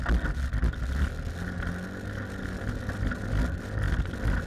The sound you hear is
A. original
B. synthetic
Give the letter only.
A